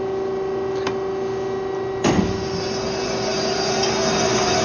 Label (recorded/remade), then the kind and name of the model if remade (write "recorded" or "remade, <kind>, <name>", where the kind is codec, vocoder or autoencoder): recorded